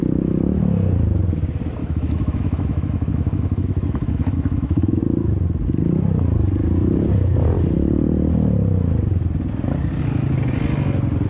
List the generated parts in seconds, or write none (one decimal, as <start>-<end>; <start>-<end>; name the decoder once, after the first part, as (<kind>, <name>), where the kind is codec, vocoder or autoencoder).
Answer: 1.8-5.0 (autoencoder, DAC-VAE)